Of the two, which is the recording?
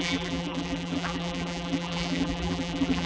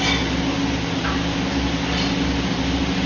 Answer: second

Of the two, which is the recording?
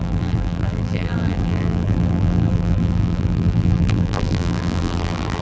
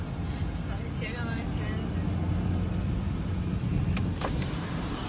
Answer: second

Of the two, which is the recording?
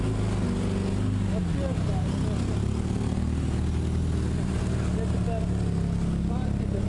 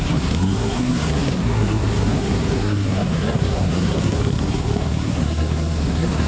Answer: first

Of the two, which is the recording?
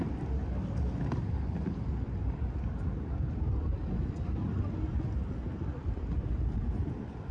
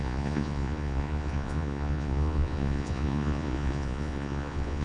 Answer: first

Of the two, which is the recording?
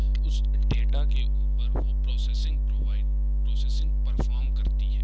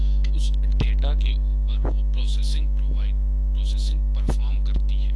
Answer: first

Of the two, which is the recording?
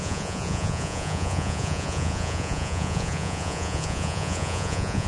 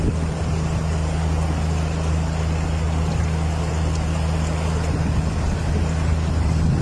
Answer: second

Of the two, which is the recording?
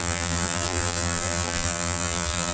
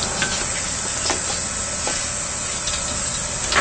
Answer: second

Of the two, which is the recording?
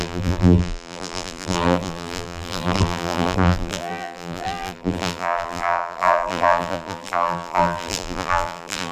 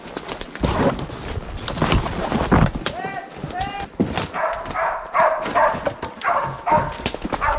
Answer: second